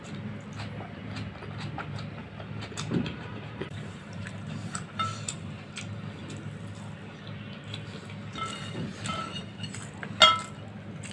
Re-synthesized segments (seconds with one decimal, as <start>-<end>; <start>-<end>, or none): 2.2-5.7; 8.9-10.0